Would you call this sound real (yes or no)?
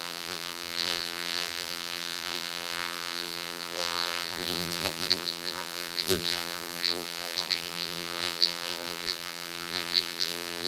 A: no